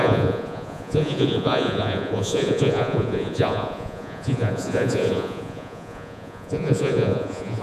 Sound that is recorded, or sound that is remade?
remade